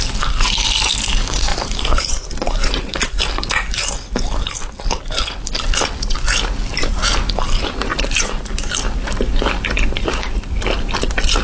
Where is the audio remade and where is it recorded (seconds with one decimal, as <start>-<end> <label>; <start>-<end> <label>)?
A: 0.0-1.5 recorded; 1.5-3.2 remade; 3.2-6.7 recorded; 6.7-7.2 remade; 7.2-7.9 recorded; 7.9-8.7 remade; 8.7-11.4 recorded